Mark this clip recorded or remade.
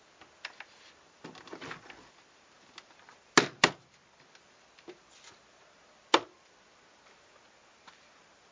recorded